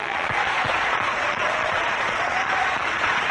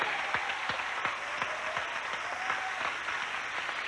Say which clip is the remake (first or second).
first